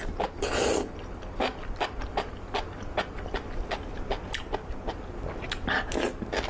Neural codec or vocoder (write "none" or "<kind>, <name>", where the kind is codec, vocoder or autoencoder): none